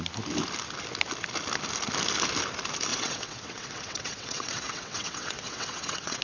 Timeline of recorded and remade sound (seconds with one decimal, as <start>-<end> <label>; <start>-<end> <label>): 0.0-2.9 recorded; 2.9-6.2 remade